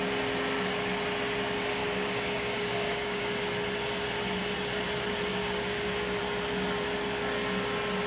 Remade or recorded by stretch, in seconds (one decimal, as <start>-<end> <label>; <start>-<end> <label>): 0.0-1.8 recorded; 1.8-3.2 remade; 3.2-5.3 recorded; 5.3-6.2 remade; 6.2-8.1 recorded